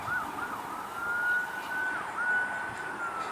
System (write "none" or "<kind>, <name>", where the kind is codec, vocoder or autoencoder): none